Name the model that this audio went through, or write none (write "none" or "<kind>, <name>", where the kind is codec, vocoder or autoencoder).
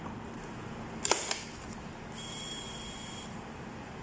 none